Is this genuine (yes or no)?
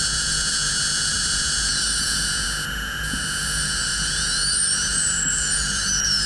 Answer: no